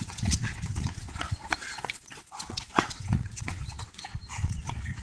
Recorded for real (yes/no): no